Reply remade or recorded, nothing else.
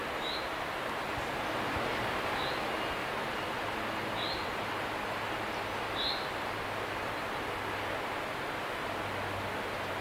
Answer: recorded